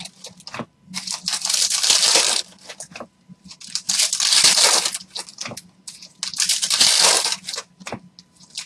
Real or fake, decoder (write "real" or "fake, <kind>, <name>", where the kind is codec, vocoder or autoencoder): real